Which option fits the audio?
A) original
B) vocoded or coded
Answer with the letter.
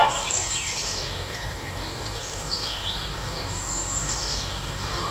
B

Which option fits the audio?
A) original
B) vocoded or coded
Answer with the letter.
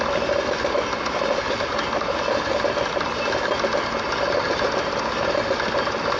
A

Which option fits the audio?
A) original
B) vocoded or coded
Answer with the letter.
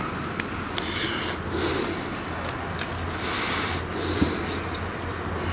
A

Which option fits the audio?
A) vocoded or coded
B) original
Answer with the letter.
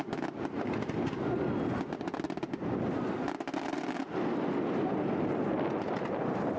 B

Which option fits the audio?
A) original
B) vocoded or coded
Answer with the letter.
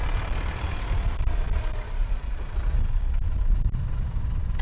A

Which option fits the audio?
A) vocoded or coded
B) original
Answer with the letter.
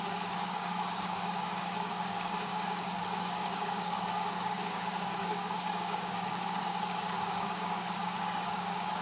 A